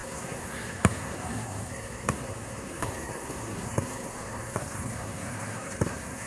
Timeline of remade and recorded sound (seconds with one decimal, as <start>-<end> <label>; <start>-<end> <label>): 0.0-6.3 remade